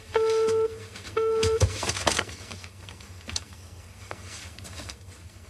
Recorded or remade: remade